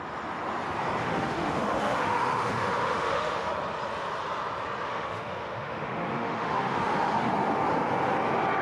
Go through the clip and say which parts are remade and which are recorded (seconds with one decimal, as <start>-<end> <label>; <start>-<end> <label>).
0.0-1.0 recorded; 1.0-3.5 remade; 3.5-4.9 recorded; 4.9-7.3 remade; 7.3-8.6 recorded